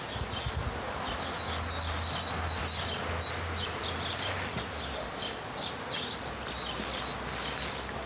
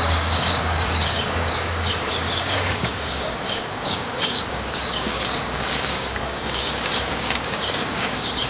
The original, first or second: first